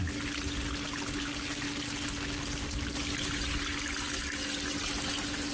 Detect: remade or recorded recorded